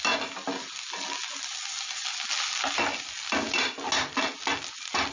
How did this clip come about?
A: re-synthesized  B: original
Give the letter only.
B